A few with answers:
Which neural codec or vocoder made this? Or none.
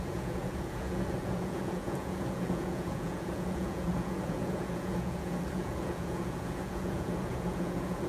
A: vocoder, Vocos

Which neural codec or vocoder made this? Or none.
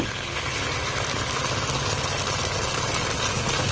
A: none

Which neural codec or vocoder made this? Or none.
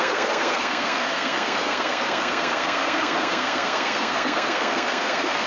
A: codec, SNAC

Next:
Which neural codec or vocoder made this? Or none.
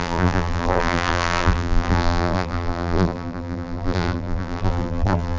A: vocoder, BigVGAN v2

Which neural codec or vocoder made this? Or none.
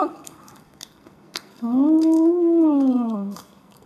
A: codec, SNAC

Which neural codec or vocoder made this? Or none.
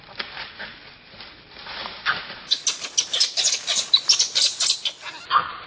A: none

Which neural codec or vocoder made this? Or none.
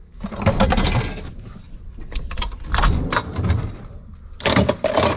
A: none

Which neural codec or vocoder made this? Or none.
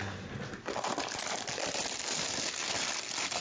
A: none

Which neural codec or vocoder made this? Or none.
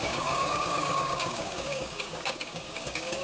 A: codec, DAC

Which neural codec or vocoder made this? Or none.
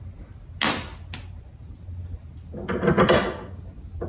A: none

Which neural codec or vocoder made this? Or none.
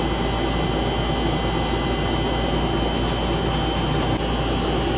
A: none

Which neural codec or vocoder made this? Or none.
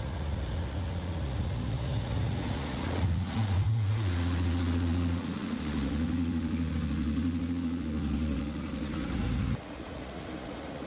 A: vocoder, Vocos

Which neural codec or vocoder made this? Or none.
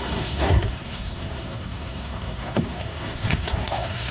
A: codec, SNAC